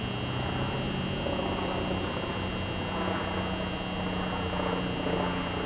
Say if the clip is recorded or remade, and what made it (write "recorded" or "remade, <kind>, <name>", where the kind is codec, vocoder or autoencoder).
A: recorded